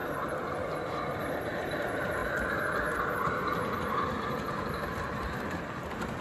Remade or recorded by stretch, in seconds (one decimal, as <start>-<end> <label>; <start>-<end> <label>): 0.0-1.2 recorded; 1.2-6.2 remade